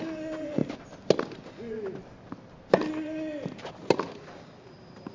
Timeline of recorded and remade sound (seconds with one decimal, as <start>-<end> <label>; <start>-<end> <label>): 0.0-5.1 recorded